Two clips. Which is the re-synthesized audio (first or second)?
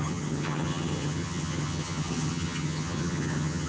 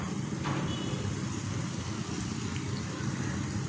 first